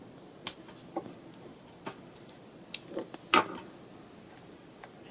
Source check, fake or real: real